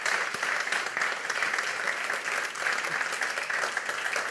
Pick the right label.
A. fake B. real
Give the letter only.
B